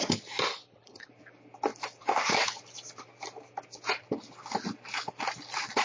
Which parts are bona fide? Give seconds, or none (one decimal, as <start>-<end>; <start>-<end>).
0.0-0.5; 1.1-5.8